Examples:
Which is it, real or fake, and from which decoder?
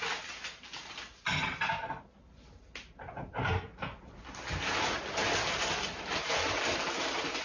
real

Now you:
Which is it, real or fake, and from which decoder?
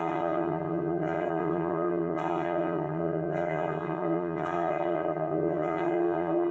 fake, vocoder, HiFi-GAN